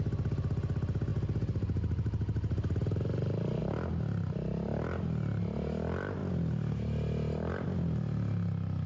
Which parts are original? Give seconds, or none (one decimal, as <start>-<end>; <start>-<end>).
0.0-8.9